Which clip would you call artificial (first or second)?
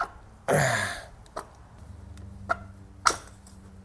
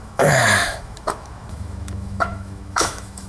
second